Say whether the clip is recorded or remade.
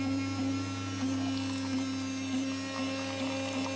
recorded